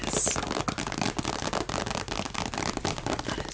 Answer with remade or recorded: recorded